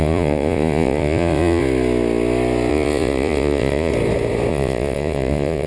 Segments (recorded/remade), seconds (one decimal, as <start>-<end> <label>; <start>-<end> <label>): 0.0-1.6 remade; 1.6-2.7 recorded; 2.7-3.9 remade; 3.9-4.5 recorded; 4.5-5.7 remade